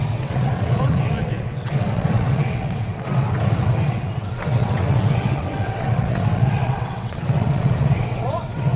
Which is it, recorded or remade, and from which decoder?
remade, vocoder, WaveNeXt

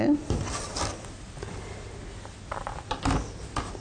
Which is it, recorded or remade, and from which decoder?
recorded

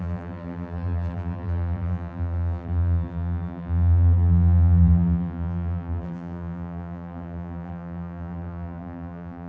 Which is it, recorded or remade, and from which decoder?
remade, vocoder, BigVGAN v2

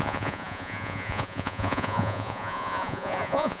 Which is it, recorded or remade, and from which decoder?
remade, vocoder, Vocos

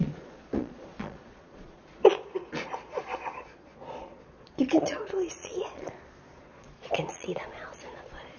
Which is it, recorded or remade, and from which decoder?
remade, vocoder, Vocos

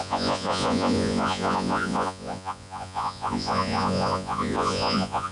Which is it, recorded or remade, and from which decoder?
remade, vocoder, Vocos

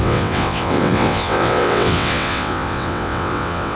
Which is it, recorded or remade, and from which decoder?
remade, vocoder, WaveNeXt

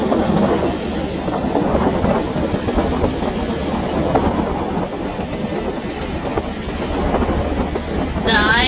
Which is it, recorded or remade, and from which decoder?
recorded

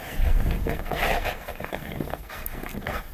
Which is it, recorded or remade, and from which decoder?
remade, codec, SNAC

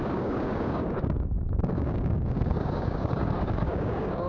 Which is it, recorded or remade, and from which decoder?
remade, codec, DAC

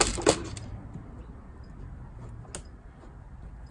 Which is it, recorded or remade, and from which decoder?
recorded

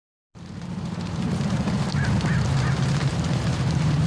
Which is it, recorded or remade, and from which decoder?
remade, vocoder, BigVGAN v2